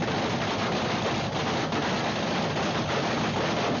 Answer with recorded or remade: recorded